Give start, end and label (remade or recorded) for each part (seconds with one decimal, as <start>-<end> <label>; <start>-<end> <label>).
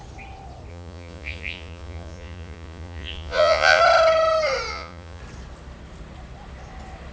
0.0-0.7 recorded; 0.7-3.8 remade; 3.8-4.7 recorded; 4.7-5.2 remade; 5.2-7.1 recorded